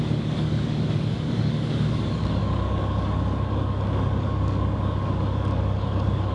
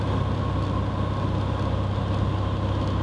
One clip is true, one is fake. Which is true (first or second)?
second